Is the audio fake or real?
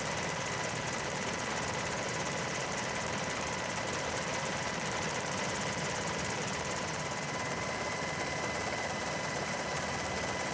fake